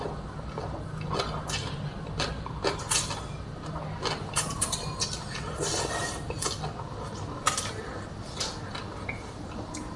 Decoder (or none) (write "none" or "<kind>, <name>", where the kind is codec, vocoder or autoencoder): none